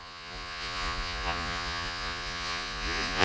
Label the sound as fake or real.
fake